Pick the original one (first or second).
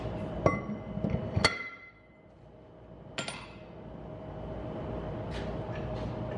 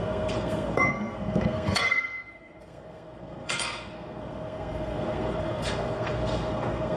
first